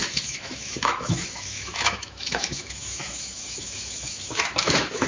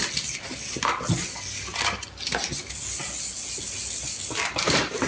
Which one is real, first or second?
second